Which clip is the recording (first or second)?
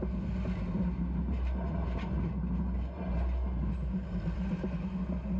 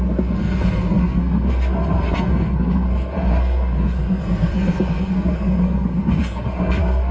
first